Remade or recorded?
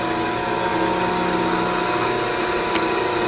recorded